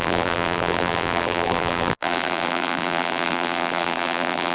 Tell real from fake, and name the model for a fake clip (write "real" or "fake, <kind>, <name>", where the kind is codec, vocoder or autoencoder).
fake, vocoder, BigVGAN v2